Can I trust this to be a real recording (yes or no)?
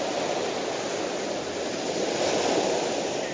yes